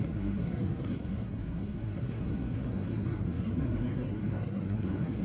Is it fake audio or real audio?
fake